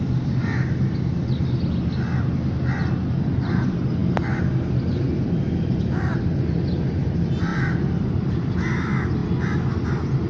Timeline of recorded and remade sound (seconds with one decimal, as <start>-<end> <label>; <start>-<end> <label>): 0.0-7.5 recorded; 7.5-8.3 remade; 8.3-10.3 recorded